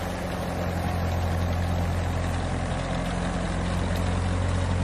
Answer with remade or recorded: recorded